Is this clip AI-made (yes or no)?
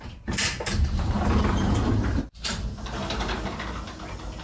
no